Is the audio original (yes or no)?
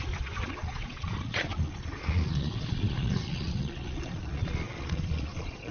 no